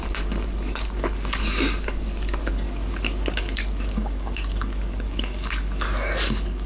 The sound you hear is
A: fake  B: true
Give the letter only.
A